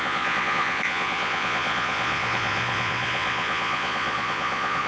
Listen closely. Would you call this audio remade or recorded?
remade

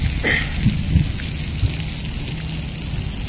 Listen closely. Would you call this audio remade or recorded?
recorded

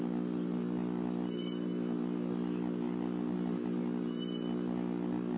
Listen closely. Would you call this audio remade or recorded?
recorded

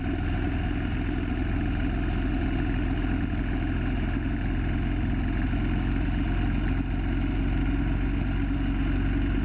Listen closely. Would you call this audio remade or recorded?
recorded